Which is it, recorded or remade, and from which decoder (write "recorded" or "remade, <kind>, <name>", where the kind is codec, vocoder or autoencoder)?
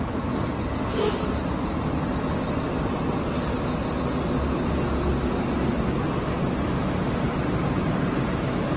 recorded